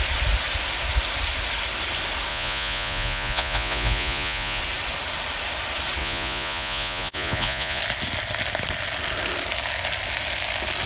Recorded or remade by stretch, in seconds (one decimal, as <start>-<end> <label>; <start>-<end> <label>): 0.0-2.3 recorded; 2.3-4.6 remade; 4.6-6.0 recorded; 6.0-7.8 remade; 7.8-10.9 recorded